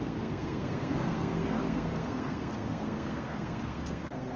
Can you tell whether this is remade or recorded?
remade